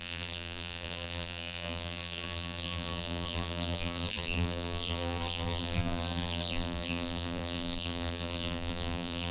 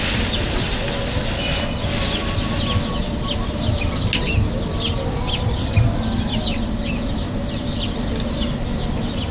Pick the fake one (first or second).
first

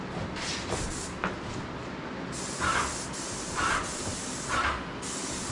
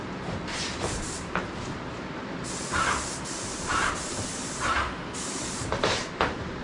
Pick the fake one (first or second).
second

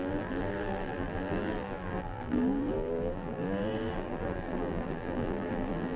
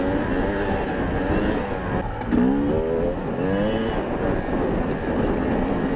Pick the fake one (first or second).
first